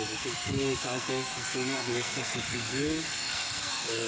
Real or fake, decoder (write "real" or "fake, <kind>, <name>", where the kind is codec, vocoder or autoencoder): fake, codec, SNAC